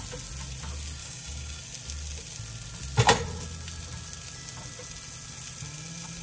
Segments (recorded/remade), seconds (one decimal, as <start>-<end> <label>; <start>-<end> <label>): 0.0-1.0 recorded; 1.0-1.6 remade; 1.6-6.2 recorded